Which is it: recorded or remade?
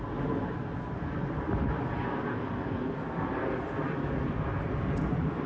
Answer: recorded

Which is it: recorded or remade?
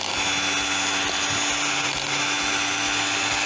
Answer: recorded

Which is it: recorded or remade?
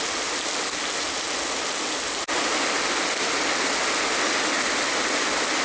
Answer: recorded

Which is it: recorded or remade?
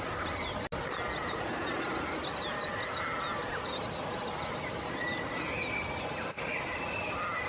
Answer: recorded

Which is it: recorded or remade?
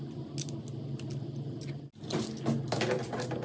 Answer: recorded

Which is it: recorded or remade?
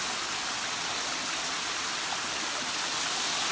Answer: recorded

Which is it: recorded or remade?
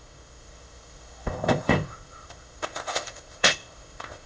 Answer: remade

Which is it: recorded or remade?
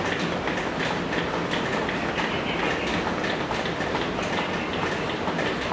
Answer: recorded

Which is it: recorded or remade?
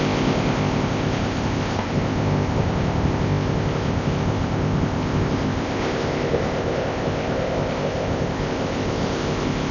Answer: remade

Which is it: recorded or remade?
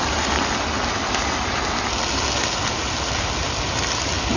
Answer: recorded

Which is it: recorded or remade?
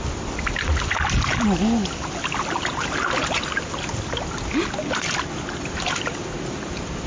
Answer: recorded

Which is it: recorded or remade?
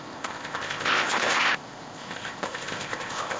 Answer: remade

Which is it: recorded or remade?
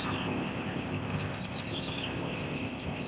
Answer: remade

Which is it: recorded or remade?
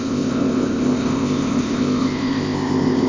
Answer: remade